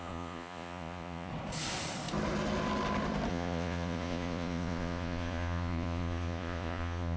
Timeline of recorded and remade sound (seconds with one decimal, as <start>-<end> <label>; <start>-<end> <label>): 0.0-1.3 remade; 1.3-3.3 recorded; 3.3-7.2 remade

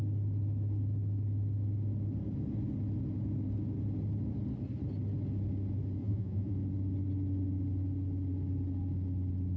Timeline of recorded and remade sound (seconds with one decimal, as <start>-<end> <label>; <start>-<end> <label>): 0.0-6.0 recorded; 6.0-6.5 remade; 6.5-9.6 recorded

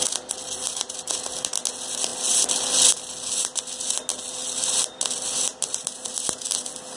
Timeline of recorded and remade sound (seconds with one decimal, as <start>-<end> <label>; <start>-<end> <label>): 0.0-7.0 recorded

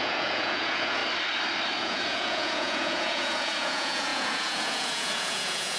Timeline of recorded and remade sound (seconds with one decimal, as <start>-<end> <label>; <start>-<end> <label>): 0.0-1.0 remade; 1.0-1.8 recorded; 1.8-5.8 remade

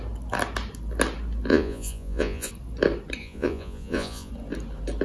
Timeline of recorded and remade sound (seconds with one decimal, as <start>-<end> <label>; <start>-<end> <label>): 0.0-1.5 recorded; 1.5-2.5 remade; 2.5-3.2 recorded; 3.2-4.3 remade; 4.3-5.0 recorded

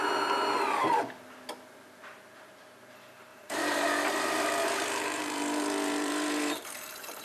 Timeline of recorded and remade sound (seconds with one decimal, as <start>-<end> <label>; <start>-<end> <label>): 0.0-3.3 recorded; 3.3-7.2 remade